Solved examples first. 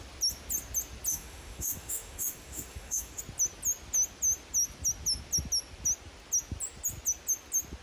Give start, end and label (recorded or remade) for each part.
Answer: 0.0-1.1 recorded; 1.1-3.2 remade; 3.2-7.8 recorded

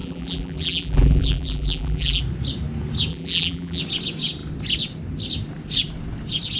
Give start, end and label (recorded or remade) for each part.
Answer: 0.0-2.2 remade; 2.2-3.1 recorded; 3.1-3.8 remade; 3.8-6.6 recorded